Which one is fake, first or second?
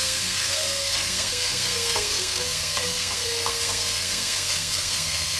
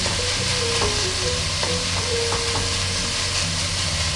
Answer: first